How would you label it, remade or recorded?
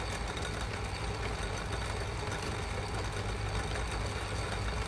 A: recorded